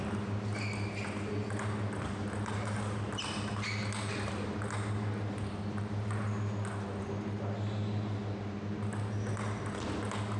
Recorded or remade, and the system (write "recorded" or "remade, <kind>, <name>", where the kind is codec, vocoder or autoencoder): recorded